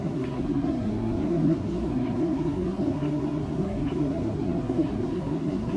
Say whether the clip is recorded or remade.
remade